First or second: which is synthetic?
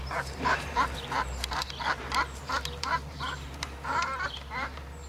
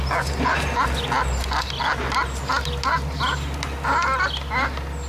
first